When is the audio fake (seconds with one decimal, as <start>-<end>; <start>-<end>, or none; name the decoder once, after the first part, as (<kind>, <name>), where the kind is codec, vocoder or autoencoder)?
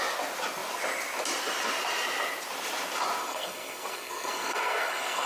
3.2-5.3 (codec, SNAC)